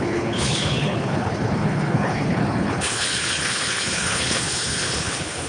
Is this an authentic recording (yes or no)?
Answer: no